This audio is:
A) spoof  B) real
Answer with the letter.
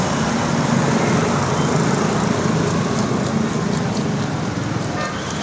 B